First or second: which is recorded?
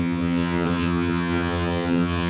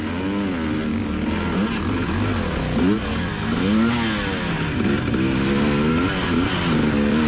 second